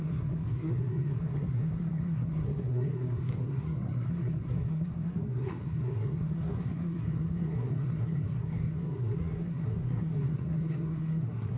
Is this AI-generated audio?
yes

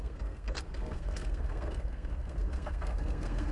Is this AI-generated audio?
yes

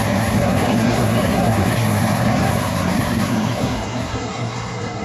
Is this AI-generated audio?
yes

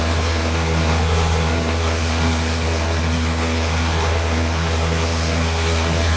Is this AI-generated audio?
yes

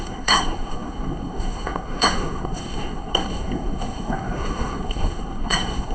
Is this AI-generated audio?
yes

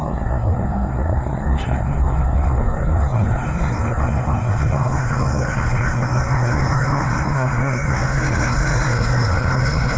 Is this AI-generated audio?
yes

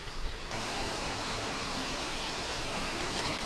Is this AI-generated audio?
yes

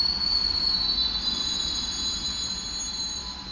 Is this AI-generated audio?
no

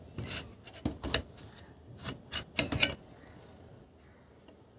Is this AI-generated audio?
no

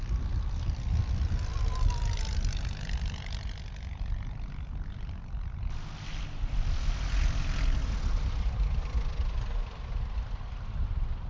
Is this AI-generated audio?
no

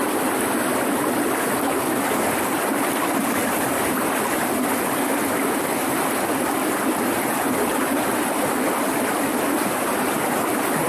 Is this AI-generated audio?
no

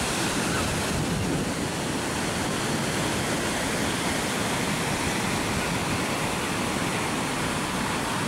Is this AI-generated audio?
no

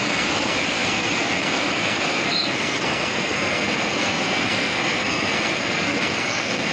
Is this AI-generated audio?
yes